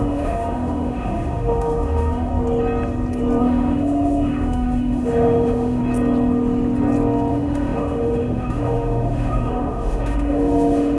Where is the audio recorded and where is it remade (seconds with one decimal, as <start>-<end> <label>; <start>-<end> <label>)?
0.0-2.3 remade; 2.3-3.4 recorded; 3.4-5.8 remade; 5.8-7.3 recorded; 7.3-11.0 remade